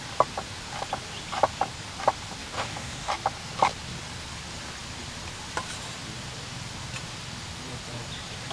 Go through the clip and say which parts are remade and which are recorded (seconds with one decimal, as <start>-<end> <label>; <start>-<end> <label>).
0.0-2.4 recorded; 2.4-3.1 remade; 3.1-8.5 recorded